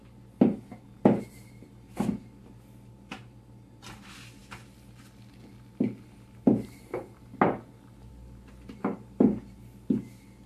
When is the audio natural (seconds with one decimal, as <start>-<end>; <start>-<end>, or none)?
0.0-10.5